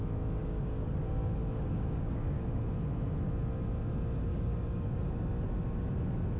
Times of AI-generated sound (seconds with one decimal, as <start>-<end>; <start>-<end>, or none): 0.4-2.6; 4.3-5.0